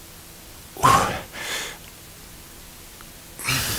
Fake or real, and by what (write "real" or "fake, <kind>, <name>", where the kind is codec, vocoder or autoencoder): real